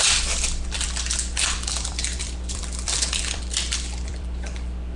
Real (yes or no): no